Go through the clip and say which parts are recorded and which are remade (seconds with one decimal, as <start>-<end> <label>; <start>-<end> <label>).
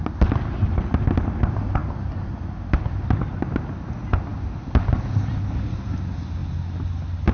0.0-7.3 recorded